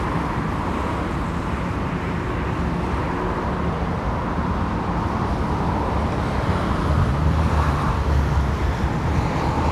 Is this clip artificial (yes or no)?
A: no